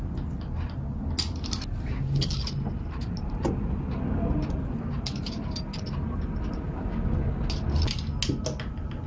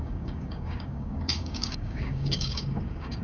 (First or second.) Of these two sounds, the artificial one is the second